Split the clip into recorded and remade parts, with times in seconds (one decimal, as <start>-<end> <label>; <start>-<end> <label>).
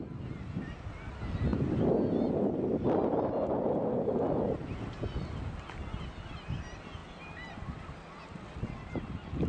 0.0-9.5 recorded